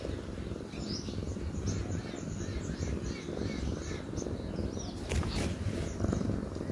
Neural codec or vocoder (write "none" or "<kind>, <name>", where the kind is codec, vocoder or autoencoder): none